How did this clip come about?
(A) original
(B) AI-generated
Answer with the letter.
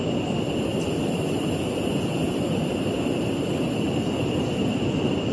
A